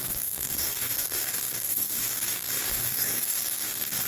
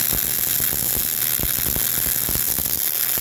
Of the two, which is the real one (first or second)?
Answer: second